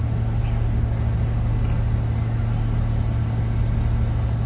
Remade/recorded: recorded